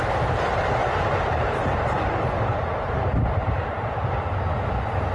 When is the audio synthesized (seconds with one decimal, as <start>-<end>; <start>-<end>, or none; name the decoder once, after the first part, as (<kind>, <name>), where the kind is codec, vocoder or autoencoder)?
0.8-3.9 (vocoder, BigVGAN v2)